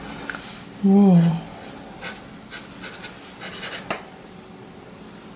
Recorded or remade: recorded